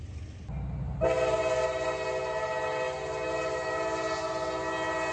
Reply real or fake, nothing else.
real